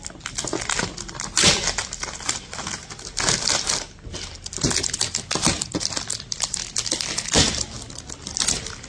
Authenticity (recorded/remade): recorded